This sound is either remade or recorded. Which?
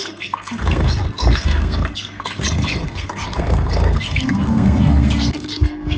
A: remade